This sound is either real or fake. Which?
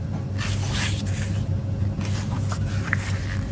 real